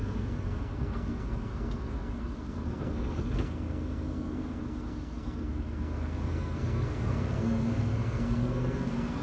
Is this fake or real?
fake